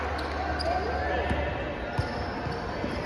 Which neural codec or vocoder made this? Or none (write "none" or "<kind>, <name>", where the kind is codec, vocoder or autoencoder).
none